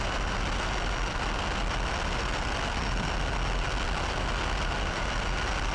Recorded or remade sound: recorded